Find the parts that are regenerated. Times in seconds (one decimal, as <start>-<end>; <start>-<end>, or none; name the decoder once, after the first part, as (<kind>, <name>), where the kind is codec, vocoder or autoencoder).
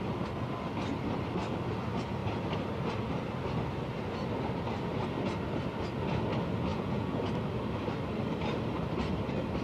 6.7-7.3 (vocoder, Vocos)